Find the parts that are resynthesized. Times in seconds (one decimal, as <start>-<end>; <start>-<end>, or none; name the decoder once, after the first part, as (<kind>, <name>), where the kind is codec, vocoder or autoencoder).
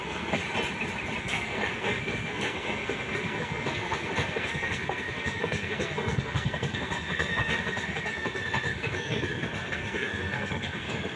0.0-0.4 (codec, SNAC); 1.2-11.2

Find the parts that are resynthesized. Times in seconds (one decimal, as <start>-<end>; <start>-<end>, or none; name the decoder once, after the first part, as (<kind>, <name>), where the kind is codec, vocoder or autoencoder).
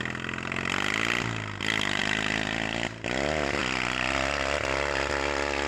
none